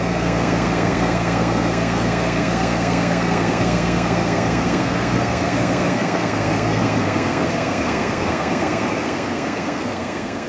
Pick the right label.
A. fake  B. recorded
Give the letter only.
A